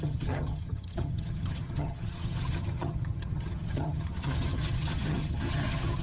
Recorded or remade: remade